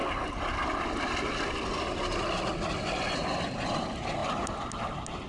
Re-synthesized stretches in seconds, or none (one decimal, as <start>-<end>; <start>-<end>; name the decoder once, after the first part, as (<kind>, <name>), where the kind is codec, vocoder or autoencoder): none